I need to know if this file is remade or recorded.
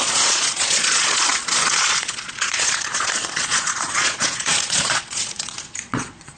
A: remade